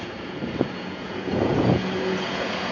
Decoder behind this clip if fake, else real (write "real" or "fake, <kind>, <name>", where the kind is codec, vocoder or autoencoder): fake, vocoder, Vocos